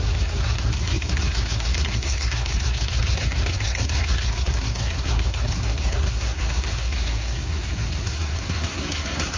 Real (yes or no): no